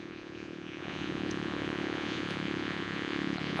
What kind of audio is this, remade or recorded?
remade